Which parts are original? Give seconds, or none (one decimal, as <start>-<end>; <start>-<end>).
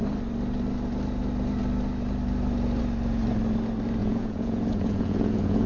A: 0.0-4.0